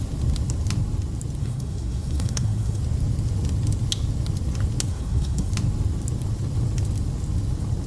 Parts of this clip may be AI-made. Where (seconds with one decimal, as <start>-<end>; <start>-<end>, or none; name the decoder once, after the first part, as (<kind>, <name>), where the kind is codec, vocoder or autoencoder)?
1.4-2.8 (codec, SNAC); 4.9-5.5